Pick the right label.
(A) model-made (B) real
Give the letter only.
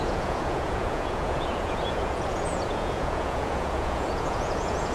A